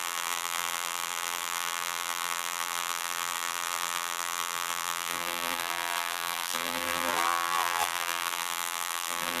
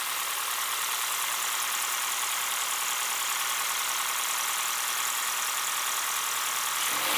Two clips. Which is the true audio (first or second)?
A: second